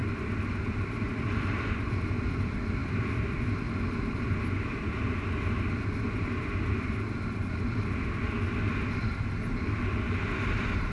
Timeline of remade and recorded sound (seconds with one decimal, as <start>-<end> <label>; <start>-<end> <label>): 0.0-1.7 remade; 1.7-10.9 recorded